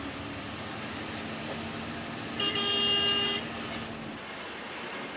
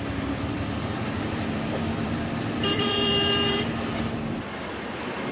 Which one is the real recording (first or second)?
first